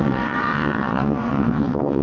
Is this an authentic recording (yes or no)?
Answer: no